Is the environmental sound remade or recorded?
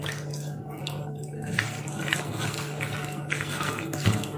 remade